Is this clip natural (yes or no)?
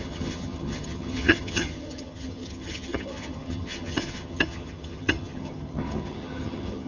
no